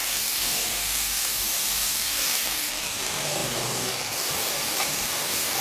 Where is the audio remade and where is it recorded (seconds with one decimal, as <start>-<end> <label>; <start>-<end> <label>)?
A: 0.0-5.6 remade